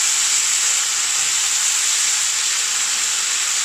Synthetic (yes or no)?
no